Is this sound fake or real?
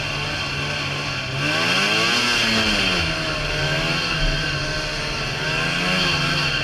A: real